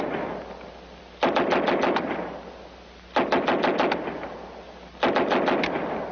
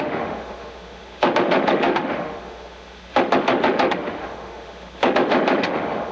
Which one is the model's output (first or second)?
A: second